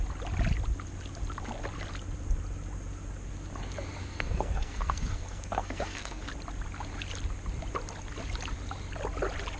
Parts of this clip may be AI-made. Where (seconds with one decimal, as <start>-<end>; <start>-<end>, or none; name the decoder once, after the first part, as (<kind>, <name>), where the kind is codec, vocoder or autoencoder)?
4.0-6.3 (codec, SNAC)